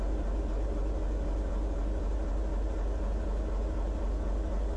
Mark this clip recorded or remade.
recorded